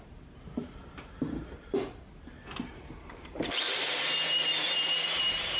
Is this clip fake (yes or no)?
yes